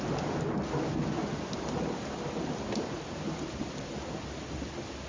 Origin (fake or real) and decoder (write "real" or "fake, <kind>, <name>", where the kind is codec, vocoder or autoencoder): real